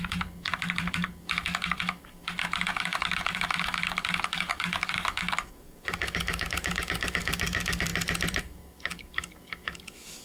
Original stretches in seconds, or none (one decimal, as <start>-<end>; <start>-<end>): 7.9-8.4

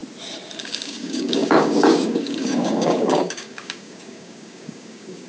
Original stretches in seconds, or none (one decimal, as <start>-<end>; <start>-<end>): 0.0-0.6